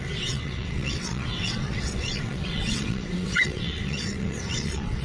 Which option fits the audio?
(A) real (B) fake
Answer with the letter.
B